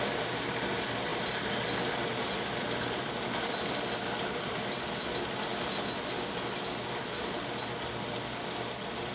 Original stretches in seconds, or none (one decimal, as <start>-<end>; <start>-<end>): 0.0-9.1